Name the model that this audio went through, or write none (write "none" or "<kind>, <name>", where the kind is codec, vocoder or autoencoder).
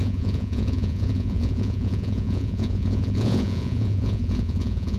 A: vocoder, Vocos